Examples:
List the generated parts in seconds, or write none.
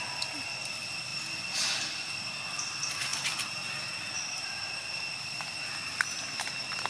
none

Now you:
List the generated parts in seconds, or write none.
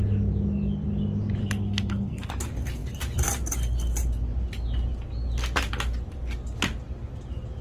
1.4-2.3 (codec, SNAC)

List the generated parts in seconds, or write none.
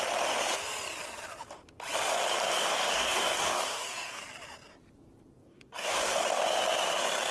2.6-4.2 (codec, DAC); 5.4-6.4